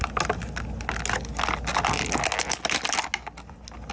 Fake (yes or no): no